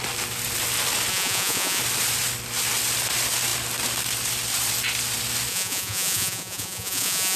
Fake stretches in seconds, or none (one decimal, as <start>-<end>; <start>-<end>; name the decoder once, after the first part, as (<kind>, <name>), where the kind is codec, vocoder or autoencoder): 1.1-1.8 (vocoder, Vocos); 5.5-7.4